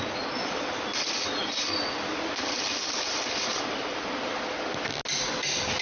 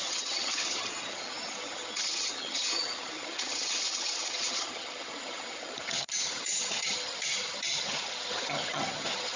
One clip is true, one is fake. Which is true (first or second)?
first